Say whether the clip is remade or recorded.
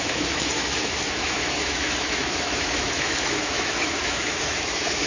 remade